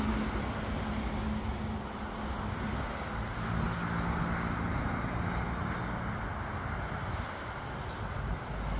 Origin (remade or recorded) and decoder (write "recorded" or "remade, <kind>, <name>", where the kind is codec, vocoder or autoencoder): recorded